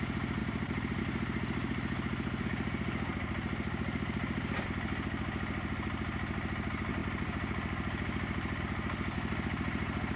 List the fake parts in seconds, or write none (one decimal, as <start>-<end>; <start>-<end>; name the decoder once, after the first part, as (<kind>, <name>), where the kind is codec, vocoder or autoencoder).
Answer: 0.4-1.0 (vocoder, BigVGAN v2); 7.0-8.6